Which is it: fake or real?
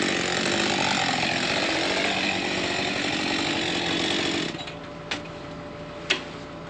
real